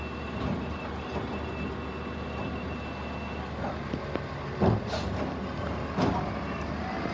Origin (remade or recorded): recorded